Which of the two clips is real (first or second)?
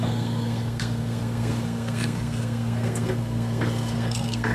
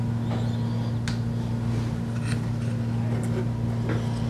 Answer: second